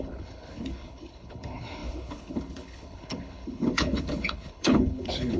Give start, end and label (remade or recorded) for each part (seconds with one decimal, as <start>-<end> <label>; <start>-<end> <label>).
0.0-5.4 remade